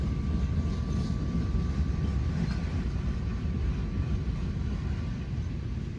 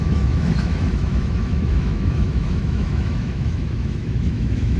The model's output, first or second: second